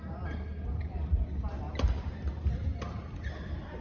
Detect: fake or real real